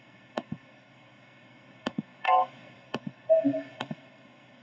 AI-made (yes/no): yes